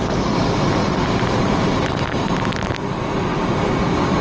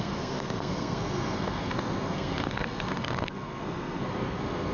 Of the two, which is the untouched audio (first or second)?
first